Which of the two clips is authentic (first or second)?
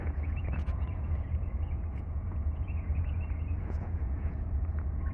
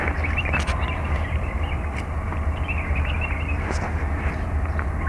second